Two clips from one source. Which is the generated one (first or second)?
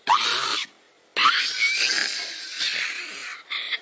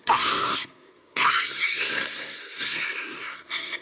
second